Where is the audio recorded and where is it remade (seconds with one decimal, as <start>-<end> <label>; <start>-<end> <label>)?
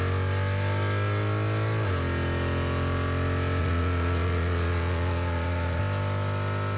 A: 0.0-3.6 recorded; 3.6-5.8 remade; 5.8-6.8 recorded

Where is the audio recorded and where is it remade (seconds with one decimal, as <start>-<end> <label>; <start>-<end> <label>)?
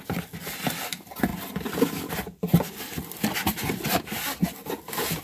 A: 0.0-5.2 recorded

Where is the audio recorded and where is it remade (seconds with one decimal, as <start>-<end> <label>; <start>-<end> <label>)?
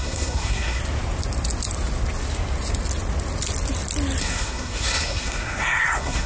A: 0.0-0.8 remade; 0.8-4.2 recorded; 4.2-6.3 remade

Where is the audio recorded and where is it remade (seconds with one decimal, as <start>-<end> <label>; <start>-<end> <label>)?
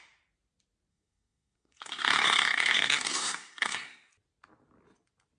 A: 0.0-0.9 recorded; 0.9-4.1 remade; 4.1-5.4 recorded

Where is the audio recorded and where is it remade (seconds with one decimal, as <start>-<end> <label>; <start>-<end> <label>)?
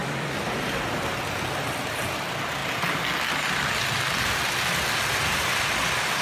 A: 0.0-6.2 recorded